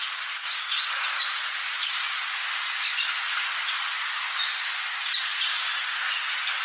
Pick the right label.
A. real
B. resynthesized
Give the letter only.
A